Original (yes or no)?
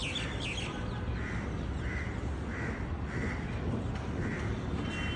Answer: yes